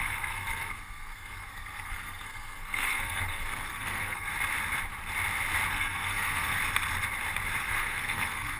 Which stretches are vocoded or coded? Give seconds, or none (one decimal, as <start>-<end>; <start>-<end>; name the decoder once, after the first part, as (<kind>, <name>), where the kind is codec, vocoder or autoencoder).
0.0-4.3 (codec, SNAC); 5.7-6.6; 7.6-8.6